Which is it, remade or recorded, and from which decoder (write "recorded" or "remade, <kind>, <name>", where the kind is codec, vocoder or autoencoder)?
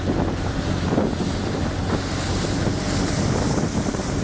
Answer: recorded